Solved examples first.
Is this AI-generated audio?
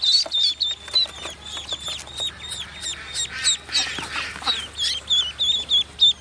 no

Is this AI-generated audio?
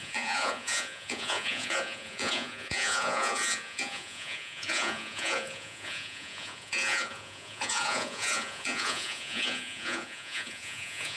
yes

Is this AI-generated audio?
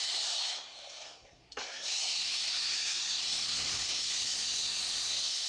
yes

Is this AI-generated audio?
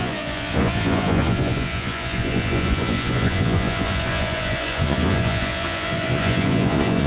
yes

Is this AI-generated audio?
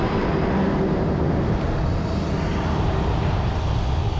no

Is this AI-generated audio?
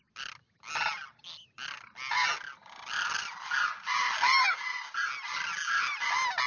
no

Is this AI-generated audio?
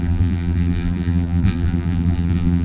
yes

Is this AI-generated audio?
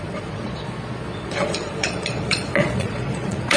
yes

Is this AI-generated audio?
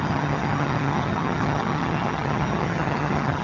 yes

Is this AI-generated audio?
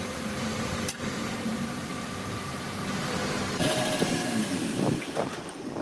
yes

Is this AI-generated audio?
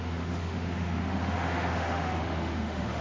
yes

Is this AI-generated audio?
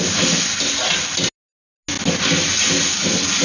no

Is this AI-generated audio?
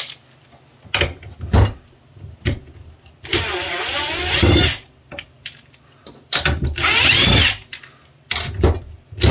no